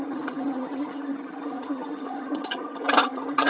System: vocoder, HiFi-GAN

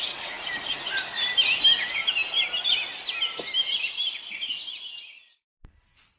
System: none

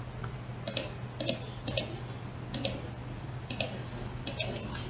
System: none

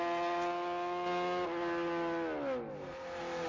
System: none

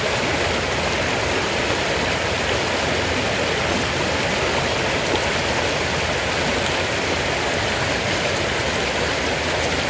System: none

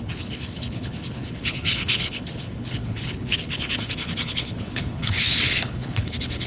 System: codec, HILCodec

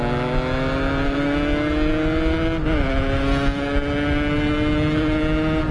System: none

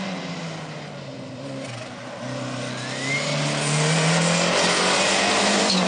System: none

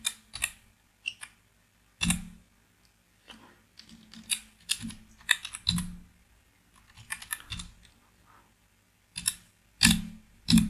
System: none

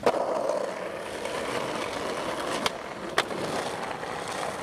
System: none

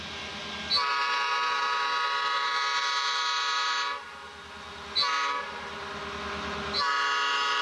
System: none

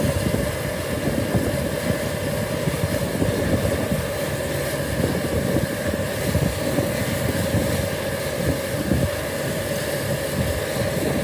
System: none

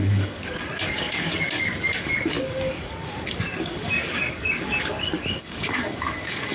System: codec, DAC